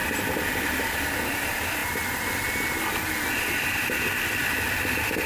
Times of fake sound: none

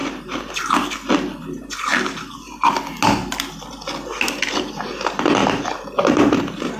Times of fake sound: 0.0-0.5; 5.4-6.8

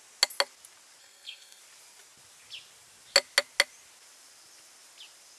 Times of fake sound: 1.0-1.6